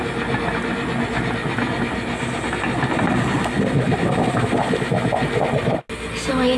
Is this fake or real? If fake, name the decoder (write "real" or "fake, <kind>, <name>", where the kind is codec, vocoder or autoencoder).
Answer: real